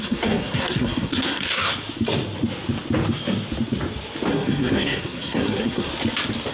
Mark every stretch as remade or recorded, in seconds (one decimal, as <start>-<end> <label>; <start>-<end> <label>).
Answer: 0.0-1.7 remade; 1.7-4.3 recorded; 4.3-5.9 remade; 5.9-6.5 recorded